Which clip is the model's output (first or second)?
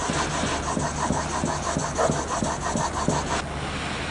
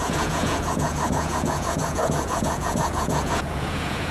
second